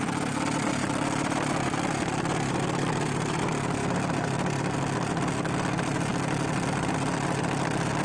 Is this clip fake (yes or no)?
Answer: no